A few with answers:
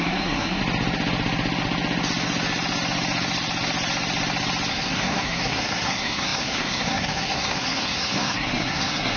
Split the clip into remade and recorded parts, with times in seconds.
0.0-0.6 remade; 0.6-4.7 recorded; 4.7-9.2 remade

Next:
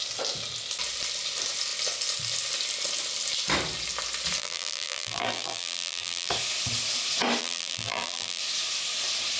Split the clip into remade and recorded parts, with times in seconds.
0.0-4.4 recorded; 4.4-6.3 remade; 6.3-7.4 recorded; 7.4-8.4 remade; 8.4-9.4 recorded